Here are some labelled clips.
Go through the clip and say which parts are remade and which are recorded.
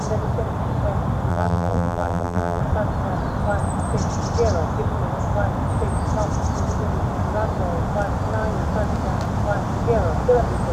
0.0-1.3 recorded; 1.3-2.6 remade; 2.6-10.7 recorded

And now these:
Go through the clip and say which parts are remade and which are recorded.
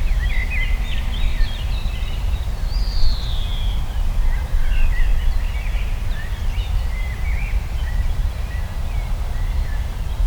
0.0-1.3 recorded; 1.3-3.3 remade; 3.3-5.1 recorded; 5.1-10.3 remade